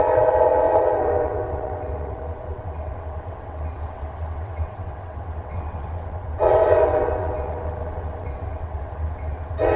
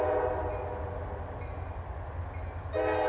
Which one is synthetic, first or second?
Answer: first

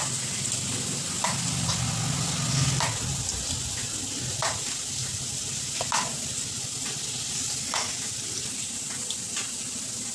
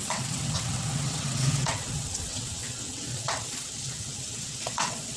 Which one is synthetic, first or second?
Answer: second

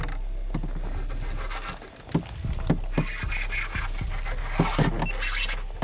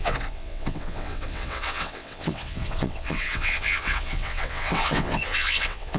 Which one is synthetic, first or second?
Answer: second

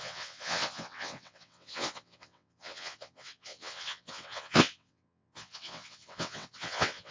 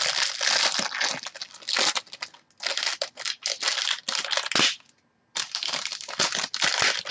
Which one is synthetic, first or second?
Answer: first